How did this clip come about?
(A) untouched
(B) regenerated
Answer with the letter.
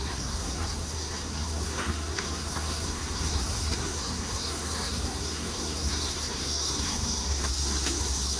B